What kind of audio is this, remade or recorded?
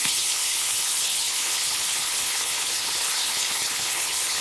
remade